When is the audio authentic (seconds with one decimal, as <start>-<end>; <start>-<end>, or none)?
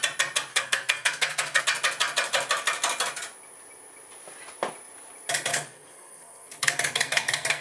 0.0-0.5; 1.6-5.5